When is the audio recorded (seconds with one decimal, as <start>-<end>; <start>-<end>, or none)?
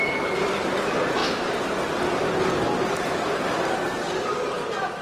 0.0-5.0